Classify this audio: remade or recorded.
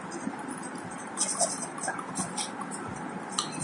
recorded